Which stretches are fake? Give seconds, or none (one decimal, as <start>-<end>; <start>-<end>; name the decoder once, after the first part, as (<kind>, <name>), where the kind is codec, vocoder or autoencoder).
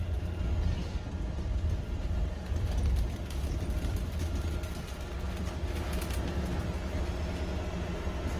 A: none